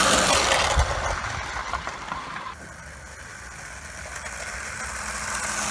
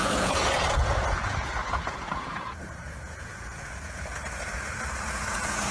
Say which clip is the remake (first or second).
second